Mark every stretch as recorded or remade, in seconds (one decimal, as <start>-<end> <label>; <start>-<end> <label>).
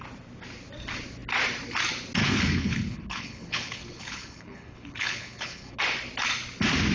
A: 0.0-2.2 recorded; 2.2-5.8 remade; 5.8-6.9 recorded